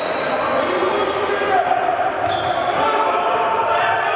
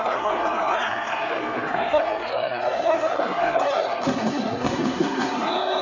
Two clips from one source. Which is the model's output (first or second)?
second